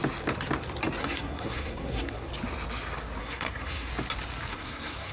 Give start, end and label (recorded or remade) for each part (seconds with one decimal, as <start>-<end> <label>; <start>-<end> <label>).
0.0-1.0 recorded; 1.0-2.3 remade; 2.3-3.2 recorded; 3.2-3.9 remade; 3.9-4.5 recorded; 4.5-5.1 remade